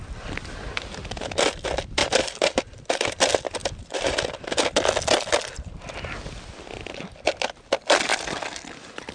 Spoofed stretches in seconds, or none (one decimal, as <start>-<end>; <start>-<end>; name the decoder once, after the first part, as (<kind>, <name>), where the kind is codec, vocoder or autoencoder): 2.0-3.2 (vocoder, BigVGAN v2)